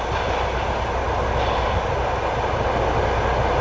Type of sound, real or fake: real